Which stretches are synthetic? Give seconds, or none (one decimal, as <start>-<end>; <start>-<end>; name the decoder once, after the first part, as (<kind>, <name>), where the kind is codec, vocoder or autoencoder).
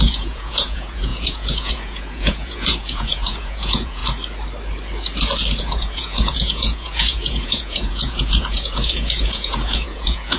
0.0-4.0 (vocoder, Vocos); 5.6-10.4